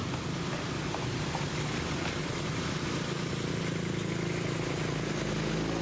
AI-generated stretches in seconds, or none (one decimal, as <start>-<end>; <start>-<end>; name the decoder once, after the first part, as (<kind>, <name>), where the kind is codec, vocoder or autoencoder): 0.0-3.5 (vocoder, BigVGAN v2)